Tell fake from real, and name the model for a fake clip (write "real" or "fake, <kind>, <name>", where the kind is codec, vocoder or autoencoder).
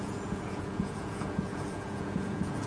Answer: fake, vocoder, Vocos